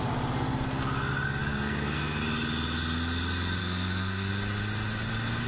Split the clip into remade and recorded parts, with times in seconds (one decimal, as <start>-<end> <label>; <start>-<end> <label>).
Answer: 0.0-1.5 recorded; 1.5-2.2 remade; 2.2-3.6 recorded; 3.6-4.3 remade; 4.3-5.5 recorded